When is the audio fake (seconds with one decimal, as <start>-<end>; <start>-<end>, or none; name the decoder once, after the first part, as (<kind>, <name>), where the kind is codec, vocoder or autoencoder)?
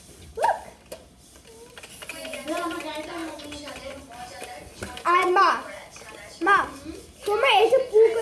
none